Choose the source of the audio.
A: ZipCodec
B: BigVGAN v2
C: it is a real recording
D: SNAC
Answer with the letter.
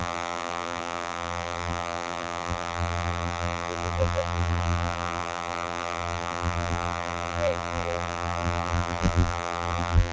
B